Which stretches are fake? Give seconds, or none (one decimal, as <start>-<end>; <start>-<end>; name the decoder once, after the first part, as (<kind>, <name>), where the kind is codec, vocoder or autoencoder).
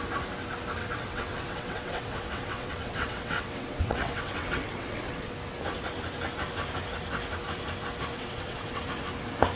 0.8-5.3 (vocoder, WaveNeXt); 8.1-8.8